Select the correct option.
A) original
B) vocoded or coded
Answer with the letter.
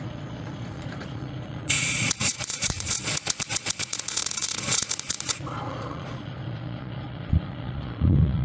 B